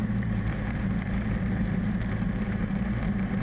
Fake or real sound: fake